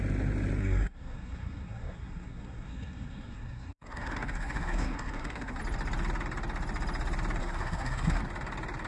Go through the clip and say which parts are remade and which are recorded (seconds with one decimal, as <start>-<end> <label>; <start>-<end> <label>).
0.0-0.6 recorded; 0.6-5.6 remade; 5.6-7.4 recorded; 7.4-8.2 remade; 8.2-8.9 recorded